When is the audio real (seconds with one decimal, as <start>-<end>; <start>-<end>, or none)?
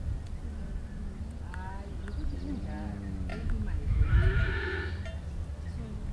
0.0-3.3; 4.8-6.1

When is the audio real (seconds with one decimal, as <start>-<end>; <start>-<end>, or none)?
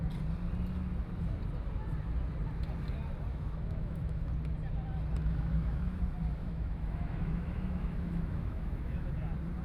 0.0-3.3; 4.3-5.2; 6.0-6.4; 9.1-9.6